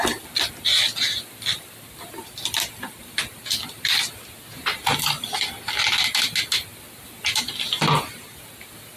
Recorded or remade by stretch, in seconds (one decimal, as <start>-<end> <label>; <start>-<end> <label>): 0.0-9.0 recorded